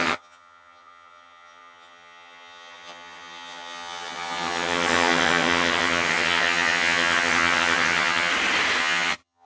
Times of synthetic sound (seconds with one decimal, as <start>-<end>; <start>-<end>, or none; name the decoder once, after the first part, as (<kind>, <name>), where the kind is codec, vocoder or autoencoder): 0.0-8.3 (vocoder, HiFi-GAN); 8.8-9.4